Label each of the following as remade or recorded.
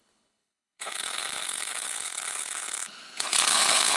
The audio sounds remade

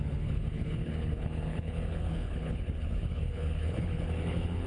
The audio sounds remade